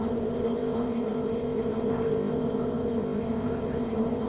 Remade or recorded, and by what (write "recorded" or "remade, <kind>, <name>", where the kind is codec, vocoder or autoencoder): remade, codec, ZipCodec